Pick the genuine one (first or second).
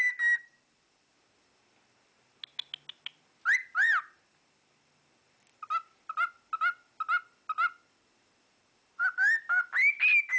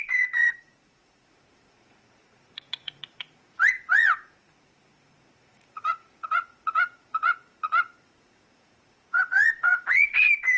first